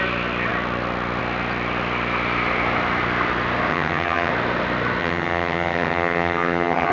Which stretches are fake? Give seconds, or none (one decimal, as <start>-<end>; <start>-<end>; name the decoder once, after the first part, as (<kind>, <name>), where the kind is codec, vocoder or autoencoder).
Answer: 3.7-4.3 (vocoder, HiFi-GAN); 5.0-6.9